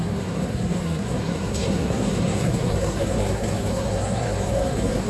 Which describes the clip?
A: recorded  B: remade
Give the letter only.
B